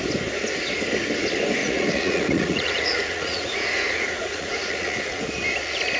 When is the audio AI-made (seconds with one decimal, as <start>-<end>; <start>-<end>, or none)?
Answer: 1.6-5.2